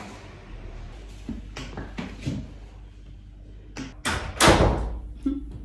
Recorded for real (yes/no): yes